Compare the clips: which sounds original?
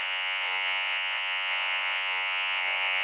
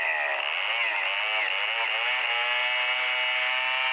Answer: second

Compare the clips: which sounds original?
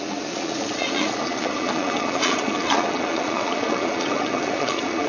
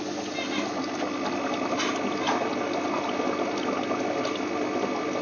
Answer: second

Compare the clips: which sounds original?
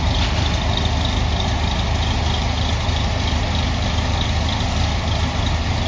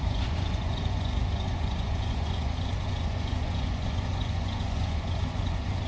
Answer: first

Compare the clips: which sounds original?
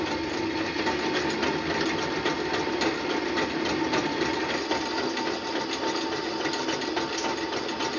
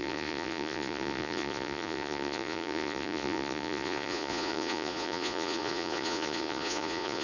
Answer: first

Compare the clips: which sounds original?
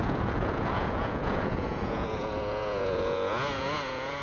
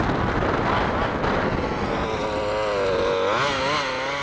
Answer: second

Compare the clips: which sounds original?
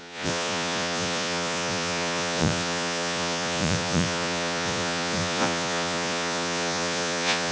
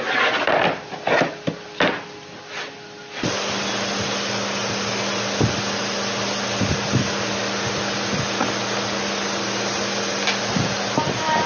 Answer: second